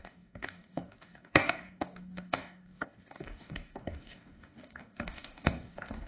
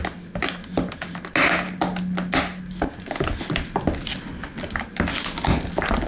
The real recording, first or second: second